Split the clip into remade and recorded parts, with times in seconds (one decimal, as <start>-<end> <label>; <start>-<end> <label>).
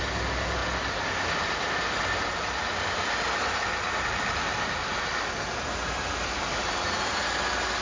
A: 0.0-0.6 remade; 0.6-2.0 recorded; 2.0-7.8 remade